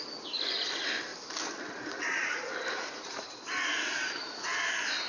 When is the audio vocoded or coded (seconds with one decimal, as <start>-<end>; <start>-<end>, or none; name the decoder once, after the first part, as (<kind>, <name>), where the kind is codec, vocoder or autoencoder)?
1.1-1.6 (vocoder, BigVGAN v2); 2.2-5.1